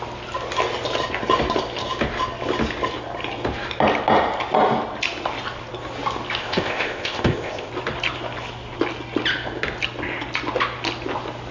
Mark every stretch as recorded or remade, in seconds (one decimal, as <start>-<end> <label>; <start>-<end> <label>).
0.0-6.4 recorded; 6.4-7.7 remade; 7.7-11.5 recorded